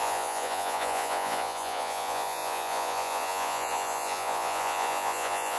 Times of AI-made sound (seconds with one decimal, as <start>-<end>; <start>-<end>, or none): 0.0-5.6